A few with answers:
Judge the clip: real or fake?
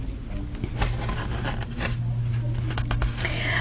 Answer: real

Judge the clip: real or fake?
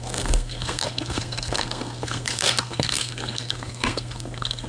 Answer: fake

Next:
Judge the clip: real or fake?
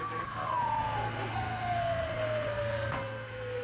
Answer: fake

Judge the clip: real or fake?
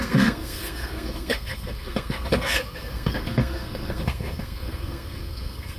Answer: fake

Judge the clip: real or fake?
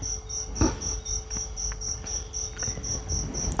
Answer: real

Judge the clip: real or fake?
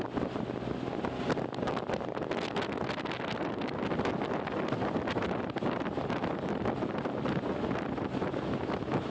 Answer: real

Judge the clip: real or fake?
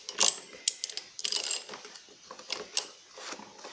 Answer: real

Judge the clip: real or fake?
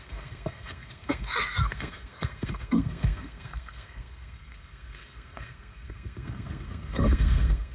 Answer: fake